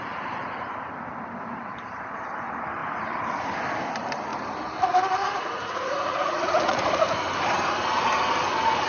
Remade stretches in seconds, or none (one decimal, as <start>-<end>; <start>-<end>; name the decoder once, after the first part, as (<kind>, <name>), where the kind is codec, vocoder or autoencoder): 5.2-7.0 (vocoder, Vocos)